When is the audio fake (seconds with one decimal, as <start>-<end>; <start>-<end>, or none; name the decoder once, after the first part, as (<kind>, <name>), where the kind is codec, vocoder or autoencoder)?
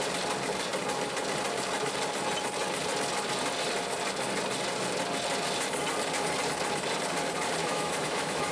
7.6-8.5 (autoencoder, DAC-VAE)